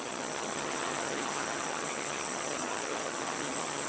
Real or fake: fake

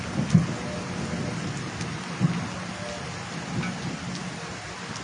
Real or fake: real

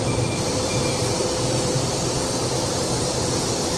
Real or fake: fake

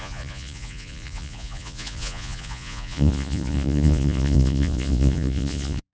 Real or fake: fake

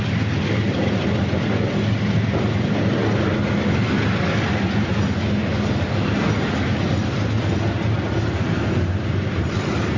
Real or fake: real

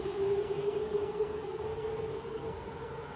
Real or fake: fake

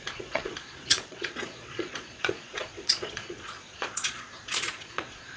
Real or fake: fake